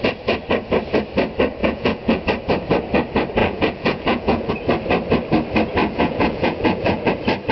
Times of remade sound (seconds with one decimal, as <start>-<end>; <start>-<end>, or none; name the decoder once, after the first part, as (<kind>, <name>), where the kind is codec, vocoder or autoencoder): 1.6-2.2 (vocoder, Vocos); 3.4-4.5; 5.8-7.1